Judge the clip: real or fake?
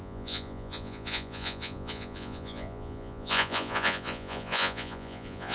fake